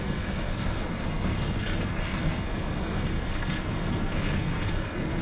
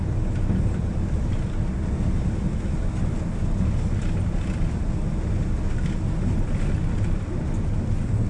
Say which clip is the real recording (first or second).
second